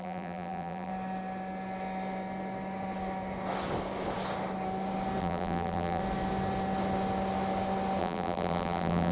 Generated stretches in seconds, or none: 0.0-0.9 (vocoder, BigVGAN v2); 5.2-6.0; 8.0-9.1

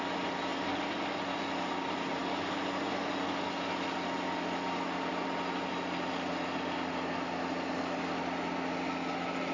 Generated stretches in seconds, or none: none

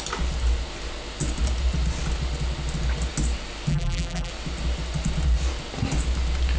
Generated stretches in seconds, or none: 3.7-4.3 (vocoder, BigVGAN v2)

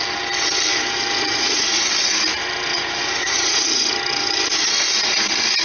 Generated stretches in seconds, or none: 1.3-1.9 (vocoder, Vocos); 2.7-3.7

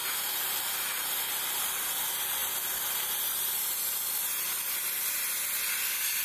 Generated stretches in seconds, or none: 0.0-0.6 (vocoder, BigVGAN v2)

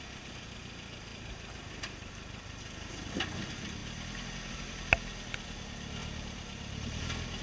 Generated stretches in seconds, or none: 1.1-2.9 (vocoder, BigVGAN v2); 6.0-7.0

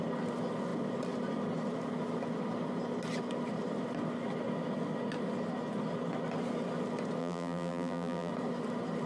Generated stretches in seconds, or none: 7.2-8.3 (vocoder, BigVGAN v2)